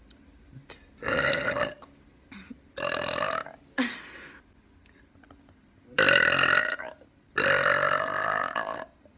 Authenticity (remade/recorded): recorded